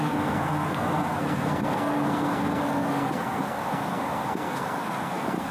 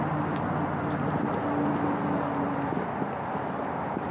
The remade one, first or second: first